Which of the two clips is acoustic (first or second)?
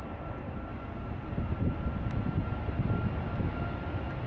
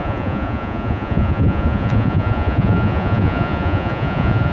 first